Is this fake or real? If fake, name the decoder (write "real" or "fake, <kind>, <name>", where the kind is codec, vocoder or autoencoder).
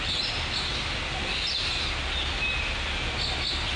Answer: real